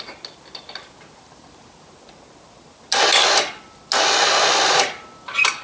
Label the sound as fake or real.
real